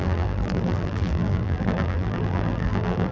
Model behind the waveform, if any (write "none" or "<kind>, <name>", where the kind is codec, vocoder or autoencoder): vocoder, BigVGAN v2